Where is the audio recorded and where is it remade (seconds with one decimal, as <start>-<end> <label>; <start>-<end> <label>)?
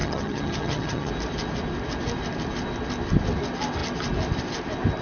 0.0-1.1 remade; 1.1-5.0 recorded